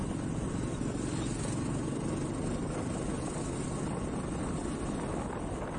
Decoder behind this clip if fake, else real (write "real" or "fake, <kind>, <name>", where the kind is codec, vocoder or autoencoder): real